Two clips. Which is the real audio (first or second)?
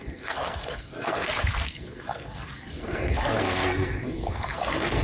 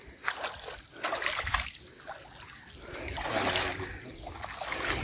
second